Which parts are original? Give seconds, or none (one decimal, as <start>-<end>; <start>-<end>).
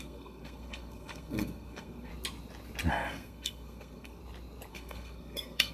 2.1-2.9; 4.2-4.7